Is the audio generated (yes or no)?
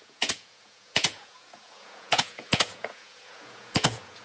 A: yes